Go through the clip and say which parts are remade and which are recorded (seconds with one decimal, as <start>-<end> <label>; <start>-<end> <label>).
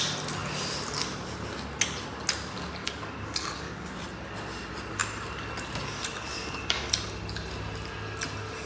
0.0-2.8 recorded; 2.8-3.9 remade; 3.9-6.3 recorded; 6.3-6.9 remade; 6.9-8.7 recorded